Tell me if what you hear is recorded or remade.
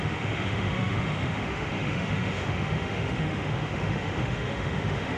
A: remade